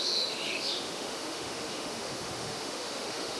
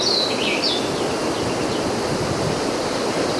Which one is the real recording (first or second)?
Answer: second